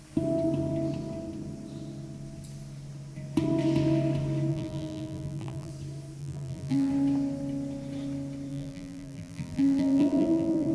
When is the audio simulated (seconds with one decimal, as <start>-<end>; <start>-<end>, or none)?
4.5-5.7; 6.2-6.9; 8.5-10.7